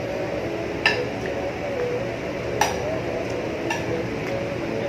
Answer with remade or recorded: recorded